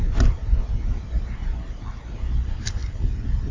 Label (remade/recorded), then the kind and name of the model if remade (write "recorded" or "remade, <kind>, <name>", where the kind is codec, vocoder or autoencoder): recorded